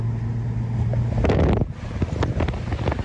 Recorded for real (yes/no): yes